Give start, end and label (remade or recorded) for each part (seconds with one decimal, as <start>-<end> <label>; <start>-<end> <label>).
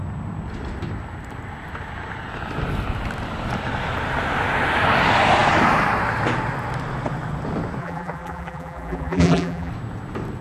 0.0-7.8 recorded; 7.8-9.7 remade; 9.7-10.4 recorded